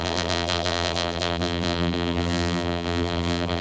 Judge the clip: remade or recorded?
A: remade